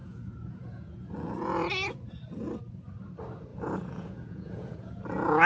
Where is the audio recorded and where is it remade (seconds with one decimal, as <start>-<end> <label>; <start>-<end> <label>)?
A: 0.0-1.1 remade; 1.1-3.5 recorded; 3.5-5.0 remade; 5.0-5.5 recorded